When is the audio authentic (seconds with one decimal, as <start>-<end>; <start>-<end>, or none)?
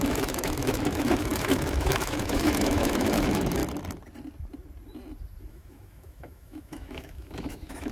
3.6-5.5